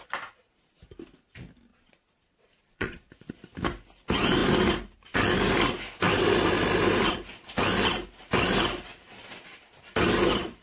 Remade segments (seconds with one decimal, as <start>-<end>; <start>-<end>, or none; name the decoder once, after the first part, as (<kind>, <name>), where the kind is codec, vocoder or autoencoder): 1.7-3.3 (vocoder, Vocos)